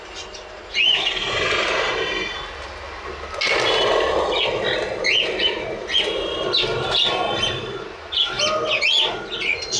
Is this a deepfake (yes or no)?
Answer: no